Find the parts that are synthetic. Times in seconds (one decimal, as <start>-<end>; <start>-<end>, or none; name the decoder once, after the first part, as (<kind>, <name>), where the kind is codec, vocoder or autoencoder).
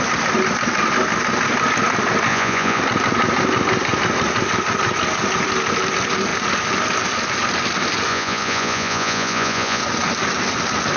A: 2.3-2.8 (vocoder, Vocos); 8.1-9.8